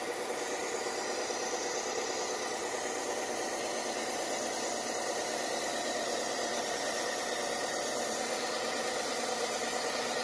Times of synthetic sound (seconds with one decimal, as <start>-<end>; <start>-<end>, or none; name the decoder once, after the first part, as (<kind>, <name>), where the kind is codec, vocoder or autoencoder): 0.0-0.6 (vocoder, BigVGAN v2); 5.6-10.2

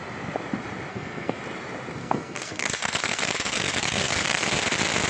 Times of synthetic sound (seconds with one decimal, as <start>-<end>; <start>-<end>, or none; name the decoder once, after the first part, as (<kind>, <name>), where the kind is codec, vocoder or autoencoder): 0.9-1.4 (codec, SNAC); 2.0-4.5

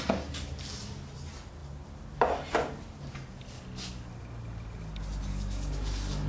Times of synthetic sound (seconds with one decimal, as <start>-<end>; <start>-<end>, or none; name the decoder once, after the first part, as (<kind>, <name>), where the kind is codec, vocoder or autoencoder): 5.3-6.3 (codec, DAC)

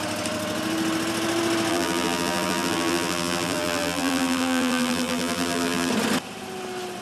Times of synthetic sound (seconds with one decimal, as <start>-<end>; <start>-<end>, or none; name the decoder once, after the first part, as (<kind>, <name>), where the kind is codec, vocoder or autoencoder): 1.7-5.9 (vocoder, BigVGAN v2)